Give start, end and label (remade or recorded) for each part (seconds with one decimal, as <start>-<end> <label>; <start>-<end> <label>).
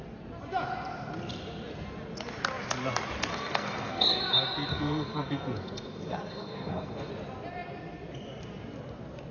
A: 0.0-3.3 recorded; 3.3-4.2 remade; 4.2-4.7 recorded; 4.7-7.1 remade; 7.1-9.3 recorded